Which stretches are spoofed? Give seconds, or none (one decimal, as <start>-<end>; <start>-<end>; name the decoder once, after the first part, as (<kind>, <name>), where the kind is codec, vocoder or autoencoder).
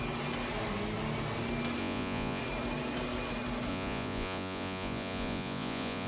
1.8-2.4 (vocoder, Vocos); 3.7-6.1